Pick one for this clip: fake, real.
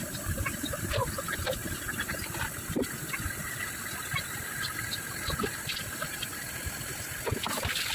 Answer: real